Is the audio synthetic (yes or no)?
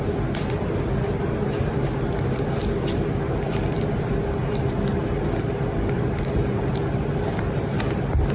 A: no